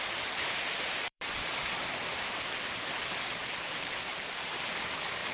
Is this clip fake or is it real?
fake